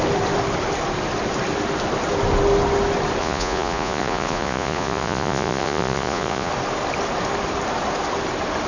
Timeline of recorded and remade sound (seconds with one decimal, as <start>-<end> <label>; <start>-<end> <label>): 0.0-3.2 recorded; 3.2-6.5 remade; 6.5-8.7 recorded